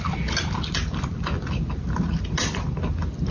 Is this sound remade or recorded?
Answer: recorded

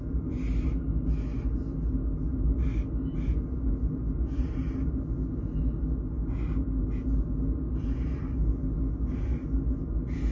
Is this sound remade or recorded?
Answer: recorded